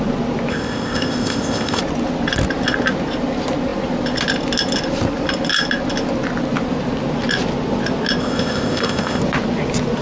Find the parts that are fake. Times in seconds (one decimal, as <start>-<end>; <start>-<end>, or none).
0.5-1.8; 8.2-9.2